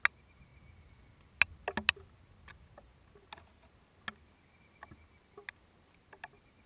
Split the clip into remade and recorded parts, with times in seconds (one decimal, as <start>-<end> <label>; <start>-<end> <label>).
0.0-6.7 recorded